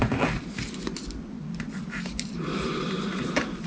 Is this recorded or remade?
recorded